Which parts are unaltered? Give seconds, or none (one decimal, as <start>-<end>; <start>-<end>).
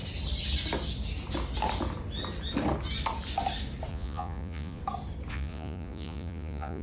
0.0-3.9; 4.8-5.3